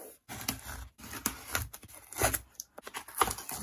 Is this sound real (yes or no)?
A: yes